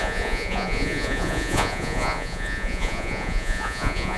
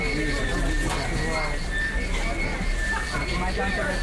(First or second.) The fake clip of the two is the first